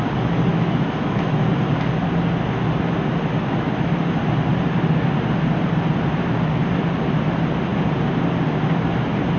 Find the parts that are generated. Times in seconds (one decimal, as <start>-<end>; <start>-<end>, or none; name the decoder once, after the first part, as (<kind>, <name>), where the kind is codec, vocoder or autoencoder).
0.5-1.4 (autoencoder, DAC-VAE)